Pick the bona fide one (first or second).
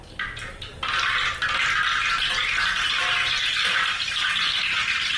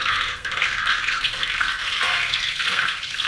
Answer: first